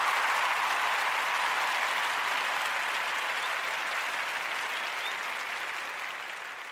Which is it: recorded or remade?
recorded